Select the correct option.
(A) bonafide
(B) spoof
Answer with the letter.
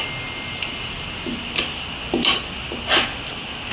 A